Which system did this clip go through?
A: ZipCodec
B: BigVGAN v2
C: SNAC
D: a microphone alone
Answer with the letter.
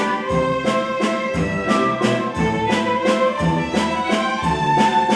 D